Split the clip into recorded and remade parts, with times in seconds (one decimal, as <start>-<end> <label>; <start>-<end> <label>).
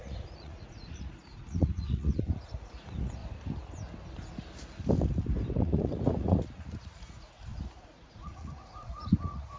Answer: 0.0-3.2 remade; 3.2-5.5 recorded; 5.5-9.6 remade